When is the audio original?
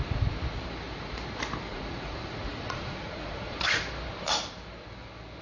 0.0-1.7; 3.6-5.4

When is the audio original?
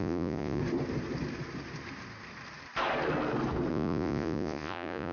0.6-3.7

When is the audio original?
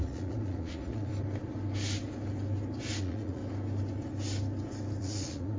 1.1-3.0; 3.4-5.0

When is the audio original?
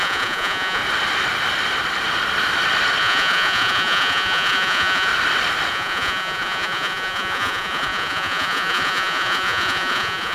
0.8-3.0; 5.1-5.7